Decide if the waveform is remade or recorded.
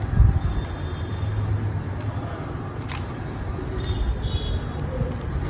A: recorded